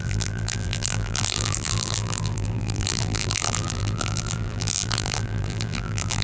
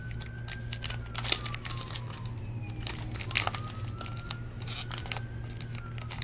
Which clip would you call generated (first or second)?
first